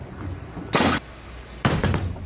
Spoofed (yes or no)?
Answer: no